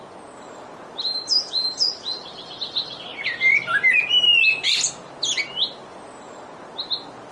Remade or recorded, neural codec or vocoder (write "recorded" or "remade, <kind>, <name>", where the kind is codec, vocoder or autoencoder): recorded